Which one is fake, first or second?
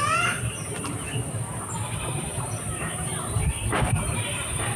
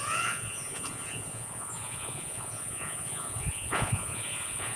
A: second